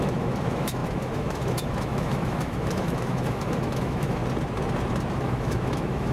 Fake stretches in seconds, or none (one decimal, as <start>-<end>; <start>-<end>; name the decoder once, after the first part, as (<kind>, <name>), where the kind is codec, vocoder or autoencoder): 0.0-4.2 (autoencoder, DAC-VAE); 5.2-6.1